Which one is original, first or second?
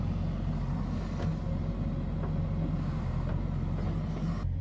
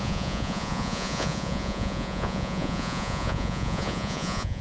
first